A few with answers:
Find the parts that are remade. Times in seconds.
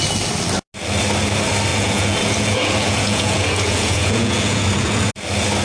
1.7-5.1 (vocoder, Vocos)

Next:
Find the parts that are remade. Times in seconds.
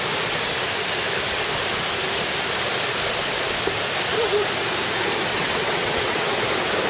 5.3-6.4 (vocoder, WaveNeXt)